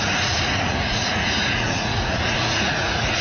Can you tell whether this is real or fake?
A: fake